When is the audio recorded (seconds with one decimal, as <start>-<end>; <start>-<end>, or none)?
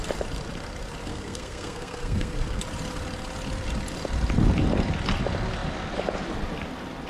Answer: 0.0-1.1; 2.6-7.1